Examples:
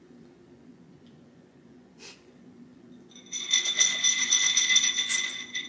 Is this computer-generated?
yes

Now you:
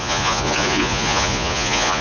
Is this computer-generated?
yes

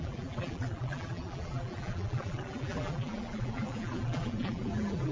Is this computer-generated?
yes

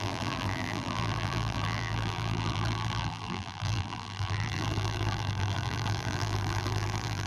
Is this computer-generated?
yes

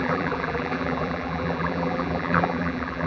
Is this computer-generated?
yes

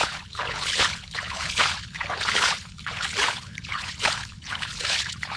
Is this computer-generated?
yes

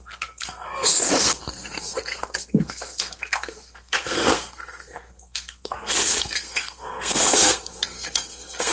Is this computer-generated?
yes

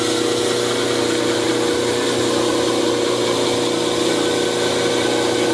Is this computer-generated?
no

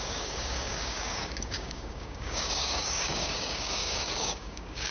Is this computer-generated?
yes